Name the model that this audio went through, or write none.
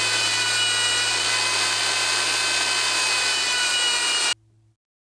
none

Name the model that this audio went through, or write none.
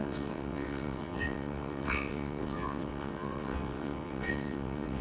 vocoder, WaveNeXt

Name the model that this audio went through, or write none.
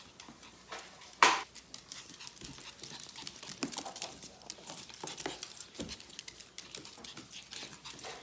none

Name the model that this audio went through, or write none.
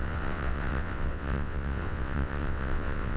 vocoder, WaveNeXt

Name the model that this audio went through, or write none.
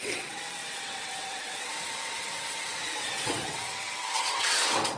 vocoder, WaveNeXt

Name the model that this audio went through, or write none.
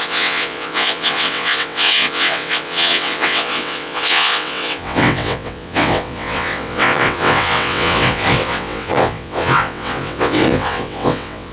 vocoder, WaveNeXt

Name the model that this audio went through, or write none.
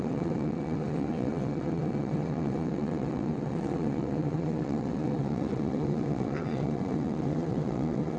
vocoder, WaveNeXt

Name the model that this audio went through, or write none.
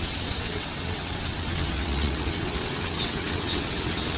vocoder, WaveNeXt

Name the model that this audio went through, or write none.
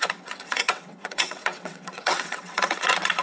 vocoder, WaveNeXt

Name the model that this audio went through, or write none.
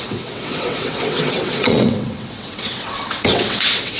vocoder, WaveNeXt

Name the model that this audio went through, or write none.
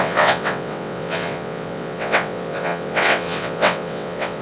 vocoder, WaveNeXt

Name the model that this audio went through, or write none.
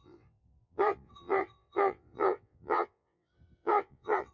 vocoder, WaveNeXt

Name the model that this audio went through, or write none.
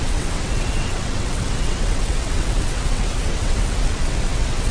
vocoder, WaveNeXt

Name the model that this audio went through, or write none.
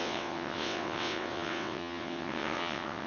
vocoder, WaveNeXt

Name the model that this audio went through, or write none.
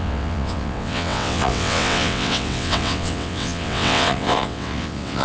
vocoder, WaveNeXt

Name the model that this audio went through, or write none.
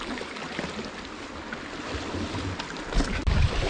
none